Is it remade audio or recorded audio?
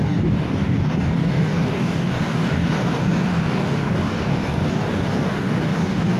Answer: remade